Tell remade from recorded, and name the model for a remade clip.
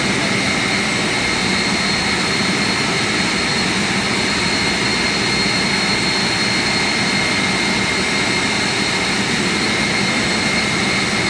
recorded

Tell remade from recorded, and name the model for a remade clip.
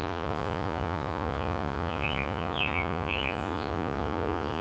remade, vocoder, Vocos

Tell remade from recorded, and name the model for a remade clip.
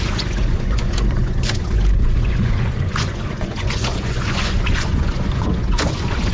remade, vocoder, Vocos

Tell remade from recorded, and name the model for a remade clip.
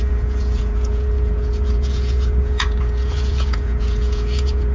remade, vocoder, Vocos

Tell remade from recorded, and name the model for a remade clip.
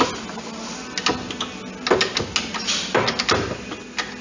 recorded